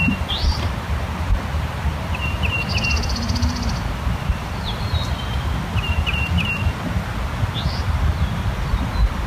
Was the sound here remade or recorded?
remade